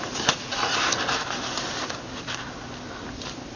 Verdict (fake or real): real